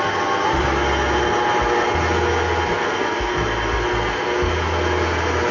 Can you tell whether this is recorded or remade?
recorded